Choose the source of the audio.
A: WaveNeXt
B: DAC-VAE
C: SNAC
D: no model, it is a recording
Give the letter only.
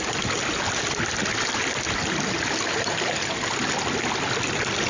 D